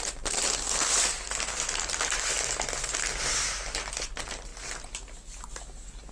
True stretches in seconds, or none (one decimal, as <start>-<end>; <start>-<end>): 0.0-6.1